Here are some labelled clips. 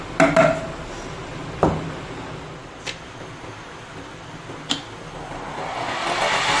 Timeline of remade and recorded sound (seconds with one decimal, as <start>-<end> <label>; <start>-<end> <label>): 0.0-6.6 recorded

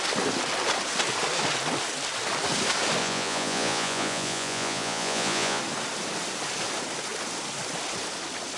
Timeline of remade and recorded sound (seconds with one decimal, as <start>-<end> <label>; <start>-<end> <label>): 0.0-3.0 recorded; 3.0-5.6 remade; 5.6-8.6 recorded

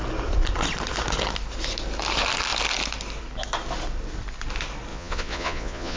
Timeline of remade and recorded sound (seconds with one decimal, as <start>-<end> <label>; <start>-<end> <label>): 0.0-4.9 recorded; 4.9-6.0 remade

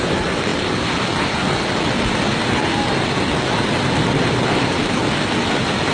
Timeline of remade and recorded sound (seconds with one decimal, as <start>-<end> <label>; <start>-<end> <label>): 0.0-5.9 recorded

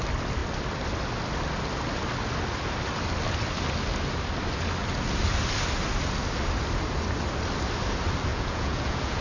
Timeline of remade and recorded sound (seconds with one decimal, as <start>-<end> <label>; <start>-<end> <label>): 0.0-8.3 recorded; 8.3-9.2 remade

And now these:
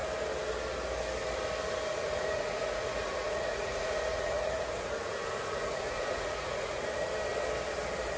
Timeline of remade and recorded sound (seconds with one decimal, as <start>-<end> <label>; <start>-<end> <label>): 0.0-1.9 recorded; 1.9-6.8 remade; 6.8-8.2 recorded

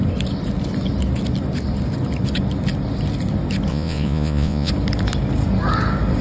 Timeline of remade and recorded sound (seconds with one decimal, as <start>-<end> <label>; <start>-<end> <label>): 0.0-3.7 recorded; 3.7-4.7 remade; 4.7-6.2 recorded